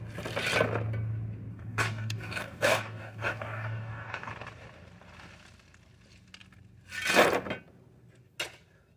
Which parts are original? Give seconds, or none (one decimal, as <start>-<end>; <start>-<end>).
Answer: 0.0-1.5; 4.3-9.0